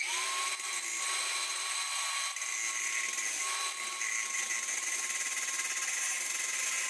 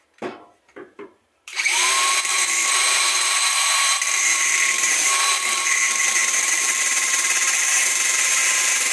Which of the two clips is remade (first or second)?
second